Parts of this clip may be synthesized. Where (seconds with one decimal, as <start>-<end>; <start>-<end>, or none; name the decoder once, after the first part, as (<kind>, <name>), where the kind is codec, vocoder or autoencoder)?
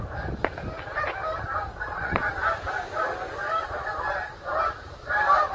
1.7-2.3 (vocoder, Vocos)